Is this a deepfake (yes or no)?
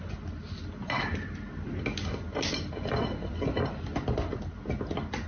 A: no